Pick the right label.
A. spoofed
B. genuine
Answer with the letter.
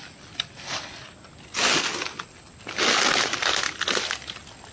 B